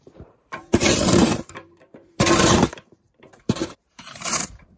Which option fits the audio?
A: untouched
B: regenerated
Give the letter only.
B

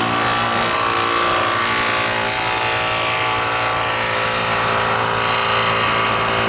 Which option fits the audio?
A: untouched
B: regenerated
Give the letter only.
A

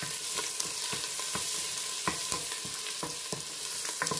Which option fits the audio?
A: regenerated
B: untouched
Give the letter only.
B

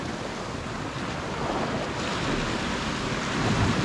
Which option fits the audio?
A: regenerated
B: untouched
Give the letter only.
B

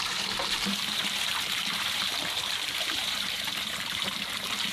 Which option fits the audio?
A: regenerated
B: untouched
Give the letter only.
A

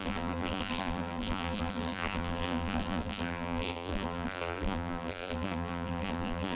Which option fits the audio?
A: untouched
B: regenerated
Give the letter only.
B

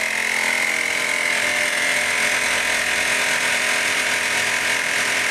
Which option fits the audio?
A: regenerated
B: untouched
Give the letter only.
B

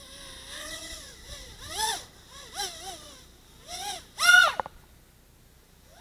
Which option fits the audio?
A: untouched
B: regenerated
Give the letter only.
A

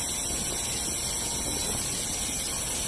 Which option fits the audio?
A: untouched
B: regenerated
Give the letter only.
A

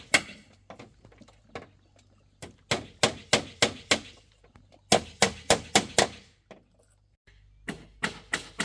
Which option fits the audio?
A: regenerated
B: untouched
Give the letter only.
B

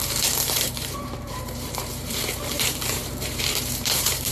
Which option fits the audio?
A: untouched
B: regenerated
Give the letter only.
B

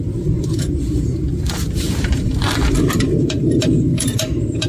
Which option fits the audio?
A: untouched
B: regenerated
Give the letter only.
B